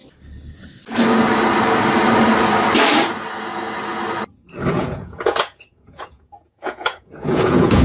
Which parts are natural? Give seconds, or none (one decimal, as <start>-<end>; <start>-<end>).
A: 0.0-4.7